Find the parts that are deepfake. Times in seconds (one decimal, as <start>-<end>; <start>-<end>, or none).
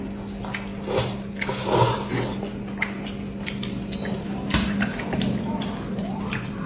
none